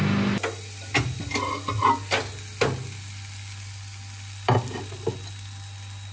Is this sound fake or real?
real